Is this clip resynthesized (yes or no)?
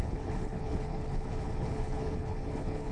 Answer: yes